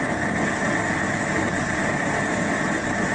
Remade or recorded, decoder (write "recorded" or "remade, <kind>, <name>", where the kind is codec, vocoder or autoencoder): recorded